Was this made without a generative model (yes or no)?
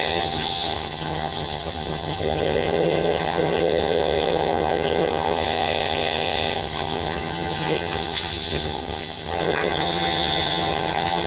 no